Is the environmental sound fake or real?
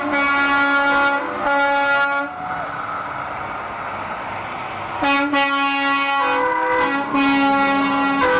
real